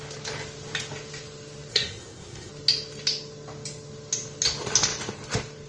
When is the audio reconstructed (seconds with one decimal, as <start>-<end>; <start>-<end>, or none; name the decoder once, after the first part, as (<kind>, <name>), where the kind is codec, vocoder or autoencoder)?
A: 1.7-2.5 (codec, SNAC)